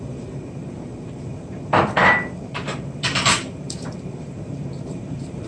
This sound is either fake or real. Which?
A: fake